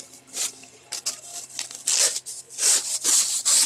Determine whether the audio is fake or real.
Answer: real